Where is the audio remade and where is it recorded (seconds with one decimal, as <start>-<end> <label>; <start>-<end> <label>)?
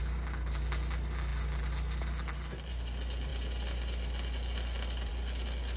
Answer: 0.0-5.8 recorded